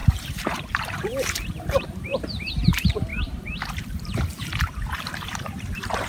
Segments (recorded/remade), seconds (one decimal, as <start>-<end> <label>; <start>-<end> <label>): 0.0-6.1 remade